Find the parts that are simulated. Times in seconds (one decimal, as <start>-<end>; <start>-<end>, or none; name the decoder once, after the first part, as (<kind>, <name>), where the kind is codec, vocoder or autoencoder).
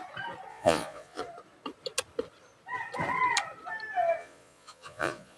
0.5-1.2 (vocoder, Vocos); 4.2-5.4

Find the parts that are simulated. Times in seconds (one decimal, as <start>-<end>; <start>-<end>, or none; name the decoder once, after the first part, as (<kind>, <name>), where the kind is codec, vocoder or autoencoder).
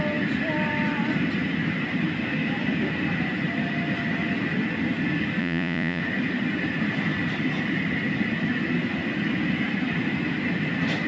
5.4-6.0 (vocoder, Vocos)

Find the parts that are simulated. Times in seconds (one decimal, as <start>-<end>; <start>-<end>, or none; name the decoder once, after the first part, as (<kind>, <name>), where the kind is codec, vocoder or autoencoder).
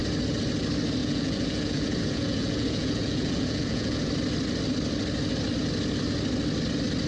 1.0-4.1 (vocoder, Vocos)